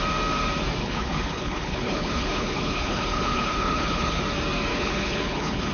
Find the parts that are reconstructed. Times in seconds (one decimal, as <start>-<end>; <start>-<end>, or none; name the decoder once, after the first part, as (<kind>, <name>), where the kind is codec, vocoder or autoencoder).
0.8-4.2 (codec, HILCodec); 4.7-5.7